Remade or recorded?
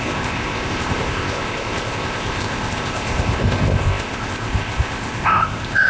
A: remade